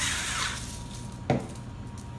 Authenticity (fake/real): real